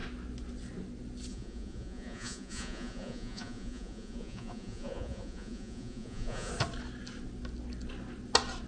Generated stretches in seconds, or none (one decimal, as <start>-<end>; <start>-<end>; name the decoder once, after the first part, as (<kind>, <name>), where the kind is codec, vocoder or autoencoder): 1.3-6.5 (vocoder, Vocos)